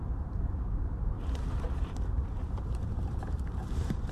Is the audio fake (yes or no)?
yes